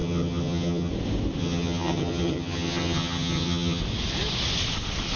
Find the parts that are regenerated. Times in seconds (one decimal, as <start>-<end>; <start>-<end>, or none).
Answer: 0.0-0.9; 1.4-3.8